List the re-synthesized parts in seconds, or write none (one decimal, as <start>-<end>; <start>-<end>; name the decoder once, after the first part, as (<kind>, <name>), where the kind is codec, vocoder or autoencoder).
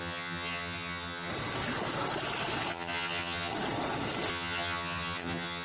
0.0-1.3 (vocoder, HiFi-GAN); 2.7-3.5; 4.3-5.6